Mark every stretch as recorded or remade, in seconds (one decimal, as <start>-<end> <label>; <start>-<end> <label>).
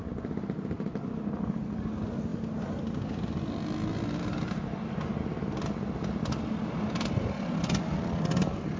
0.0-8.8 recorded